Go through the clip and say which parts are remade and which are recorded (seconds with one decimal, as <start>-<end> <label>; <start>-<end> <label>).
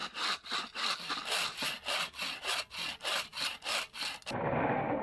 0.0-5.0 recorded